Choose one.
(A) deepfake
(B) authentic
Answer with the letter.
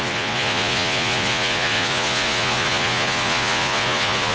A